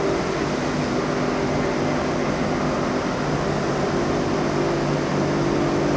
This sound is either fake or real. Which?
real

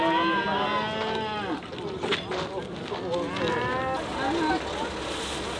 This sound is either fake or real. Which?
real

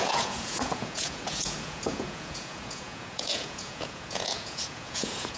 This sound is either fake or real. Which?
fake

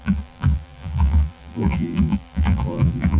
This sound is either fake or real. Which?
fake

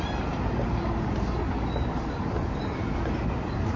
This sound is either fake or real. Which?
real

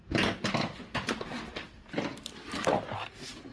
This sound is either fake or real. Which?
real